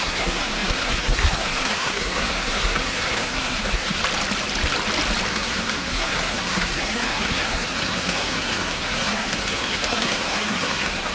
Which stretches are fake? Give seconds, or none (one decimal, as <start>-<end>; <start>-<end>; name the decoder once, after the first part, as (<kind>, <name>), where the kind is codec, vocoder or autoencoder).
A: 0.0-4.0 (codec, SNAC); 5.3-11.1

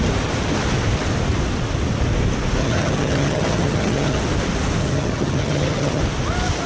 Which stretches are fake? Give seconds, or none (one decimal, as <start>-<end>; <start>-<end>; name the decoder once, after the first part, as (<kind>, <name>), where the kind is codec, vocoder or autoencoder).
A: 2.6-4.2 (vocoder, HiFi-GAN); 4.8-6.0

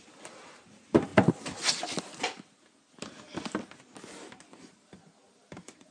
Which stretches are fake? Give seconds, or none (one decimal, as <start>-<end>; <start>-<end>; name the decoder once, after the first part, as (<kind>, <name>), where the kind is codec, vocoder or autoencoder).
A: 0.0-1.1 (vocoder, BigVGAN v2); 4.6-5.9